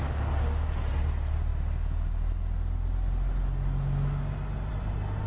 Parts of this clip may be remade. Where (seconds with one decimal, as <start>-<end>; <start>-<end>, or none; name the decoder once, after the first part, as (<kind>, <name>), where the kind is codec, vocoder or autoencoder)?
none

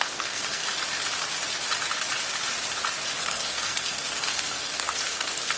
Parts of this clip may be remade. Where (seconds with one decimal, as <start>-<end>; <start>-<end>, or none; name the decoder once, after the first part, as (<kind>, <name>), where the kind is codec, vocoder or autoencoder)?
0.0-0.6 (codec, SNAC); 3.2-5.6